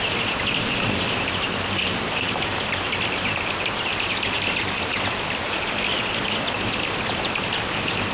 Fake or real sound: fake